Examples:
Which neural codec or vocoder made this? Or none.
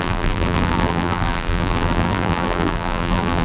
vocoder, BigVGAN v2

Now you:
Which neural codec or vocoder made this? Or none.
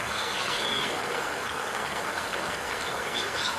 codec, SNAC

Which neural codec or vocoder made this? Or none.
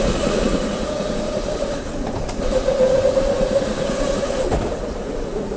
vocoder, Vocos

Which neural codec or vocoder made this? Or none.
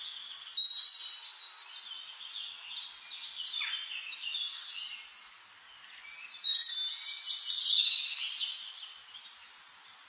none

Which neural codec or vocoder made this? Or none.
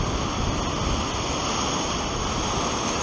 none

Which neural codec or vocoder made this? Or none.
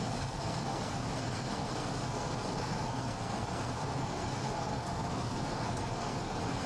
codec, SNAC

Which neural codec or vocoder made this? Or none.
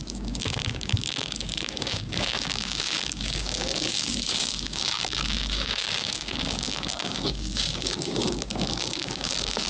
codec, DAC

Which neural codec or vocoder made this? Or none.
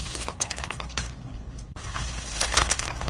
codec, SNAC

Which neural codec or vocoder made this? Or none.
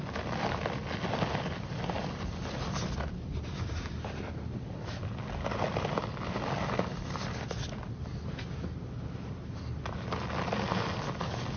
none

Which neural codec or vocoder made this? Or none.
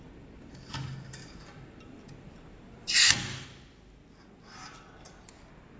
none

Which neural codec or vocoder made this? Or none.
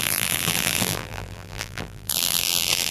vocoder, BigVGAN v2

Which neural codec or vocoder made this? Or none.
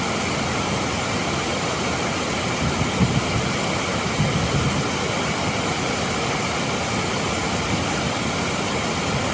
none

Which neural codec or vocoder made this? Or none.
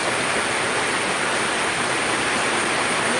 none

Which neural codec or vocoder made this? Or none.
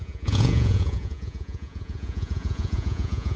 vocoder, Vocos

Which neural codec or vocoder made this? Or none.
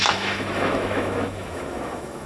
autoencoder, DAC-VAE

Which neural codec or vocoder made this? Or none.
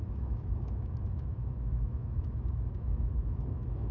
autoencoder, DAC-VAE